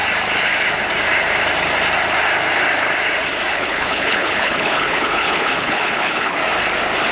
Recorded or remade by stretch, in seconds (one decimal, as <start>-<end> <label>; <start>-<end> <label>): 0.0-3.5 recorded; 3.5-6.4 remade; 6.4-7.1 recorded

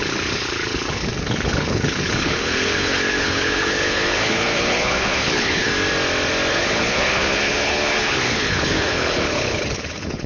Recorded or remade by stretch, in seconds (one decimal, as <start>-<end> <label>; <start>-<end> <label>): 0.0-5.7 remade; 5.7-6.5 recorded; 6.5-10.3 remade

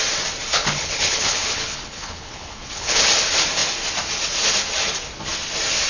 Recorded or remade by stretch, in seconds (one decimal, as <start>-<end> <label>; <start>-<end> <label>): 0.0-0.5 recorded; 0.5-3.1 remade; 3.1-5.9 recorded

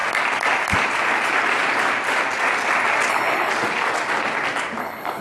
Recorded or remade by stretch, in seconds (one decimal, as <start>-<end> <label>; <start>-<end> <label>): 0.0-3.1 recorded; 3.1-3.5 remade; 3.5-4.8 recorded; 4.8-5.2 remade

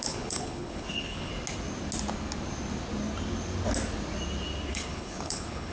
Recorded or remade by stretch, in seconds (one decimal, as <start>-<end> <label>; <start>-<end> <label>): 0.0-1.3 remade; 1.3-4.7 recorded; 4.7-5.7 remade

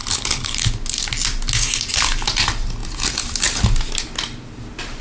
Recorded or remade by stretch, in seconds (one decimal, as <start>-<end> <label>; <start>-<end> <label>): 0.0-0.7 remade; 0.7-5.0 recorded